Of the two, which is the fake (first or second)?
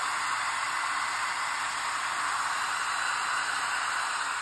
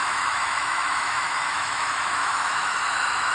second